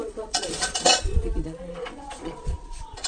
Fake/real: fake